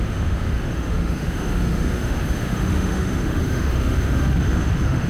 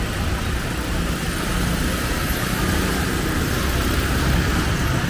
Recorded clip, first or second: second